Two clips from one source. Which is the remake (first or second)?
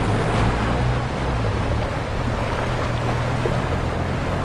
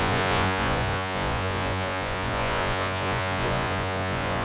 second